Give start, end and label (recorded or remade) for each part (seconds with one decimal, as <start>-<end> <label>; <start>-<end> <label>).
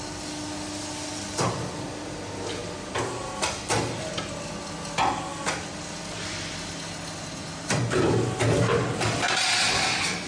0.0-10.3 recorded